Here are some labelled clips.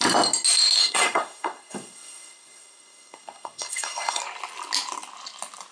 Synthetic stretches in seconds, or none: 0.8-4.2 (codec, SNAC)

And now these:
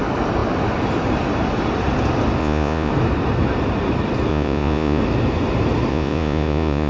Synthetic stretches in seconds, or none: 2.4-2.9 (vocoder, Vocos); 4.3-5.0; 5.9-6.9

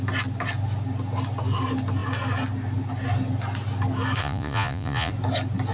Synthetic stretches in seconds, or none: 4.2-5.1 (vocoder, Vocos)

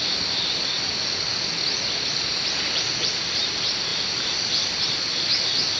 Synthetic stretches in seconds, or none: 3.9-5.8 (vocoder, BigVGAN v2)